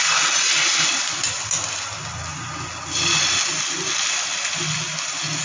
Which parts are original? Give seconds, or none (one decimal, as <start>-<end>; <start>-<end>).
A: 0.0-5.4